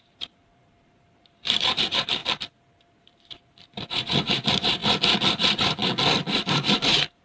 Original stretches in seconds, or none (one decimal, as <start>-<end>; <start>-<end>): 2.2-3.0; 4.8-5.3; 5.8-6.5